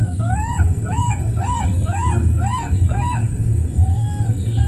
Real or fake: fake